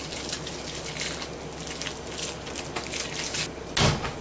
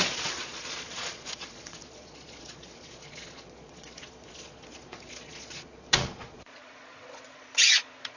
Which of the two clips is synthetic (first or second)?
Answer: second